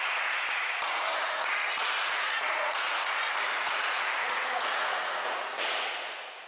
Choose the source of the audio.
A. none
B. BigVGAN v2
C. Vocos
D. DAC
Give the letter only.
C